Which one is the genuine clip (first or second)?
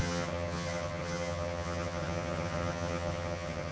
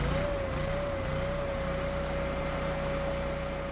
second